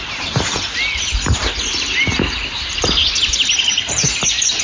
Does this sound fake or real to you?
real